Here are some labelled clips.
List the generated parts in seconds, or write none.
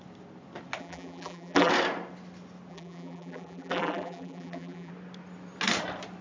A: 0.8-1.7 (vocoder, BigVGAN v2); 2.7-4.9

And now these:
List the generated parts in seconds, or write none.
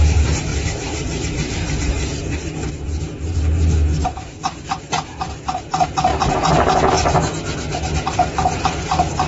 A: 0.0-6.1 (vocoder, BigVGAN v2); 8.5-9.3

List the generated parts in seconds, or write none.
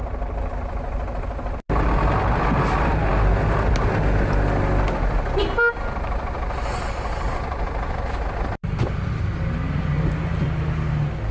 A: none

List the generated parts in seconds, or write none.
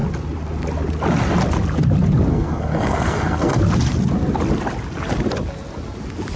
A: 2.3-3.6 (codec, SNAC)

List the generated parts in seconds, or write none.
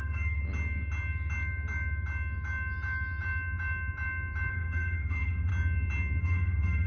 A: 0.0-0.4 (autoencoder, DAC-VAE); 4.5-5.5; 6.2-6.9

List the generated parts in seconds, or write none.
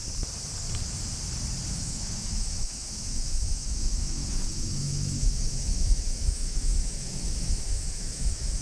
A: 1.7-8.6 (autoencoder, DAC-VAE)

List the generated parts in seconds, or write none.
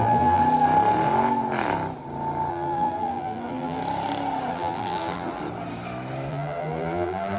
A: 0.0-0.4 (vocoder, BigVGAN v2); 2.5-3.8; 4.5-5.4; 6.3-7.4